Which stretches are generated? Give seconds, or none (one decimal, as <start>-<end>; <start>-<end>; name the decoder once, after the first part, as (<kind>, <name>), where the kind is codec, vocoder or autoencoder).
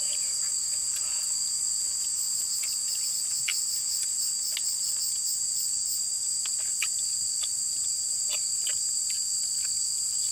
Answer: none